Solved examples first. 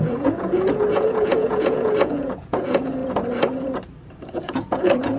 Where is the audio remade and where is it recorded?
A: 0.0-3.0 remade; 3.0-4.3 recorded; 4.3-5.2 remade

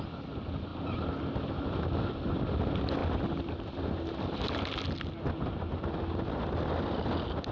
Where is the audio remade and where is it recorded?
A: 0.0-7.5 recorded

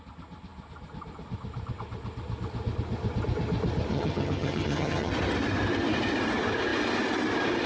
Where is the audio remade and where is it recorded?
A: 0.0-3.9 recorded; 3.9-5.1 remade; 5.1-7.7 recorded

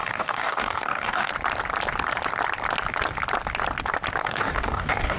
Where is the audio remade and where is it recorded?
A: 0.0-1.3 remade; 1.3-4.2 recorded; 4.2-5.2 remade

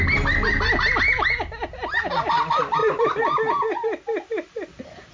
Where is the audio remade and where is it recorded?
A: 0.0-2.8 recorded; 2.8-5.1 remade

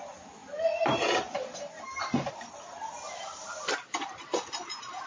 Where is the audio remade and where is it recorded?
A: 0.0-5.1 recorded

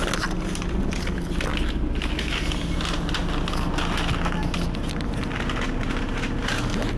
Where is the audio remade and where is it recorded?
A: 0.0-7.0 recorded

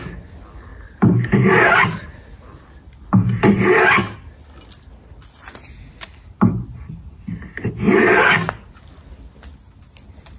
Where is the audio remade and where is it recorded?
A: 0.0-0.7 recorded; 0.7-2.2 remade; 2.2-10.4 recorded